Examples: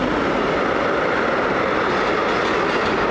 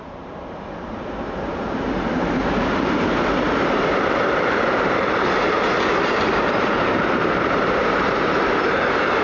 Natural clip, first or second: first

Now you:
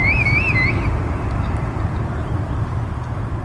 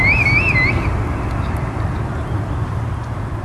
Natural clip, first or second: second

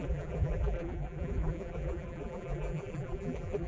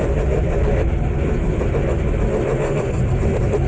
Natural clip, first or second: second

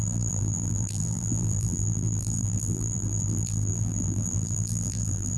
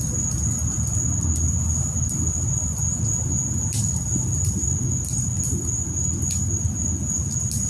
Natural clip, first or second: second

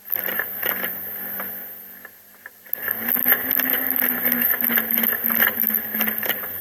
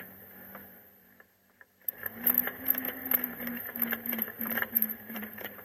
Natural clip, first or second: first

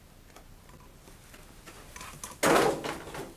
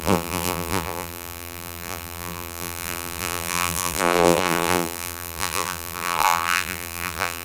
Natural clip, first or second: first